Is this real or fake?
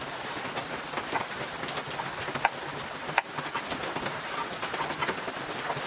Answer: real